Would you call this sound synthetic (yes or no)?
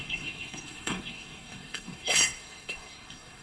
yes